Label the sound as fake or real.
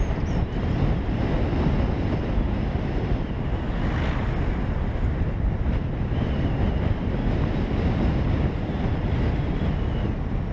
real